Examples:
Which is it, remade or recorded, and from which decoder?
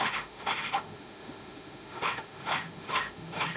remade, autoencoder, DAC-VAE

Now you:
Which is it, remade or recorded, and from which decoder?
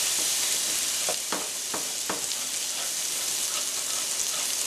recorded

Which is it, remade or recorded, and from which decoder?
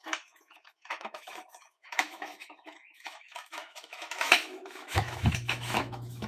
remade, autoencoder, DAC-VAE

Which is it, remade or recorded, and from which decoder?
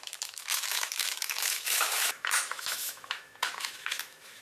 remade, autoencoder, DAC-VAE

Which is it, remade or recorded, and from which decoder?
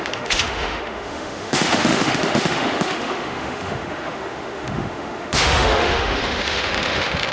remade, autoencoder, DAC-VAE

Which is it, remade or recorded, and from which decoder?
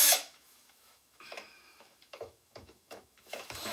remade, autoencoder, DAC-VAE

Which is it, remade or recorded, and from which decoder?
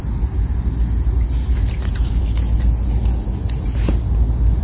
recorded